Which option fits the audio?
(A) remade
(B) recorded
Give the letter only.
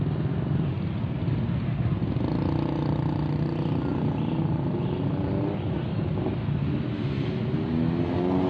B